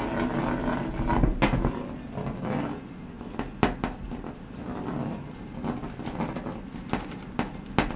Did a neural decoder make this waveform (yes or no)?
no